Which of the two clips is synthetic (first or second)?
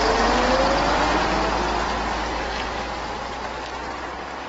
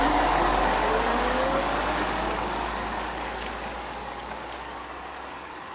second